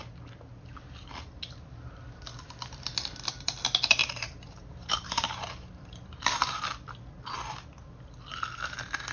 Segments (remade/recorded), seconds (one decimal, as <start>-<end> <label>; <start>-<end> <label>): 0.0-4.0 recorded; 4.0-6.6 remade; 6.6-9.1 recorded

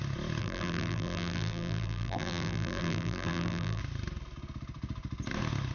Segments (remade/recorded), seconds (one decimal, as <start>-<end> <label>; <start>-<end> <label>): 0.0-0.4 recorded; 0.4-3.8 remade; 3.8-5.7 recorded